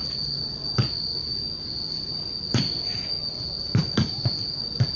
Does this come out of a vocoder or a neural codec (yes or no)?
no